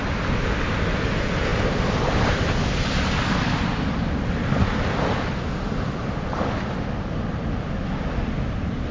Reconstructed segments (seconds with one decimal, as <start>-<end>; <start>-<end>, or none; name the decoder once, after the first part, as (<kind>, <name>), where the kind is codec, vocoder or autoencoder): none